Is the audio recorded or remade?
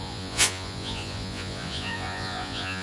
remade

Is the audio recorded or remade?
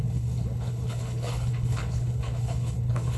remade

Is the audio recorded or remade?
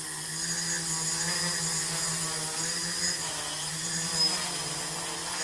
recorded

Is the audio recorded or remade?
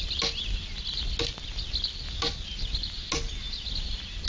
recorded